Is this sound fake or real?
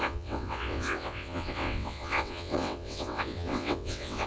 fake